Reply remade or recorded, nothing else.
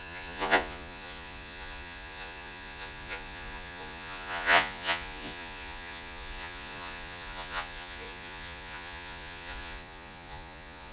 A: remade